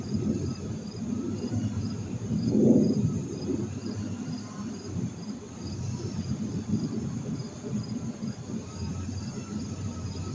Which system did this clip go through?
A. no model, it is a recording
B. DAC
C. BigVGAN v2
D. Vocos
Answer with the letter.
C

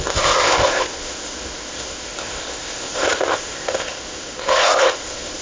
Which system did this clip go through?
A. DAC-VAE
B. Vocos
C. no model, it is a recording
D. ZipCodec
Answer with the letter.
D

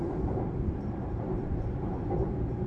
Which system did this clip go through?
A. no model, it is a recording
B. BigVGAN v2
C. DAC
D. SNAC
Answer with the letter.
B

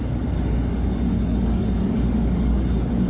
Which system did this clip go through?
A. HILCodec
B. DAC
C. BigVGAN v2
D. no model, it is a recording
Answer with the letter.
B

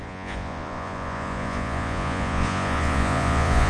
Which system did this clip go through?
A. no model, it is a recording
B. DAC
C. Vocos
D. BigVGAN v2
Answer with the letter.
C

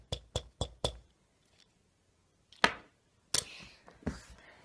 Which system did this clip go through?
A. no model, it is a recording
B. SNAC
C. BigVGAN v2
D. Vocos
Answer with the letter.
A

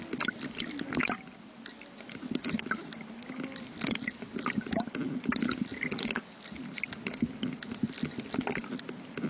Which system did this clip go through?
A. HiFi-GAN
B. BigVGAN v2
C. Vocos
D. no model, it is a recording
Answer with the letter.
D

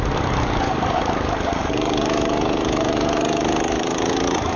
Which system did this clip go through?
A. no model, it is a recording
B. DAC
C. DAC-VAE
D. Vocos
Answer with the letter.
B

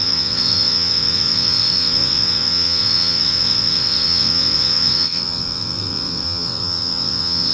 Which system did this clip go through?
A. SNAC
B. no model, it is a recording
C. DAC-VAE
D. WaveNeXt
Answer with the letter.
D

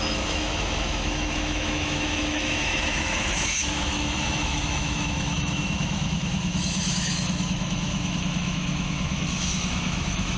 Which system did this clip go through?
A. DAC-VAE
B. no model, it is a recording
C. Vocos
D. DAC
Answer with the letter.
A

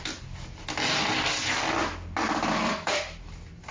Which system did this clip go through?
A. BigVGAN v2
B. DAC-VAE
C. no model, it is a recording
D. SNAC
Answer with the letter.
A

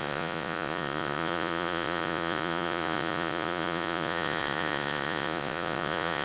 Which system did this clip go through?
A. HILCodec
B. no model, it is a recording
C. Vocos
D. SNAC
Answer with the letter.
C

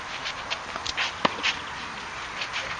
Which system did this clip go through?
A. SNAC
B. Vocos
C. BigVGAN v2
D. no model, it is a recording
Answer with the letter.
D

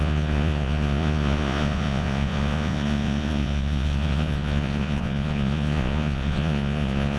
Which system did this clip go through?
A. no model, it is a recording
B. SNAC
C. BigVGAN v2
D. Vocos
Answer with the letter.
D